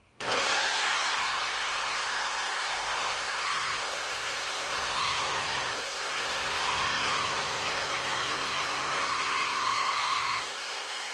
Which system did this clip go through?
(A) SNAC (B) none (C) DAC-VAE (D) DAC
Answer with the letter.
A